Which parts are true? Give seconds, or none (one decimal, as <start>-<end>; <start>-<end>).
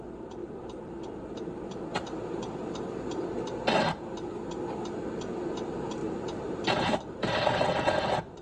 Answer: 0.0-0.4; 1.1-1.9; 2.7-6.0; 7.3-8.4